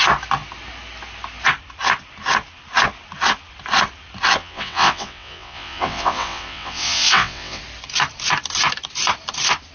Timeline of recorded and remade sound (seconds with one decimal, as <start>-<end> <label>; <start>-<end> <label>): 0.0-4.4 recorded; 4.4-7.6 remade; 7.6-9.7 recorded